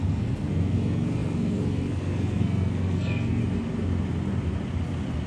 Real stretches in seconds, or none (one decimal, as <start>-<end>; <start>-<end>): 3.4-5.3